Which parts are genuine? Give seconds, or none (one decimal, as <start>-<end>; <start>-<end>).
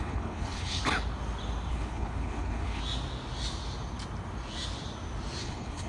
0.8-1.7; 2.8-5.4